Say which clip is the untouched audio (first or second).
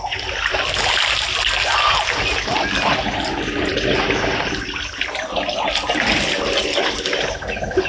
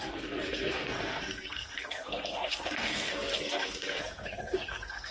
first